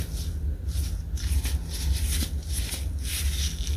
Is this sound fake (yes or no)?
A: no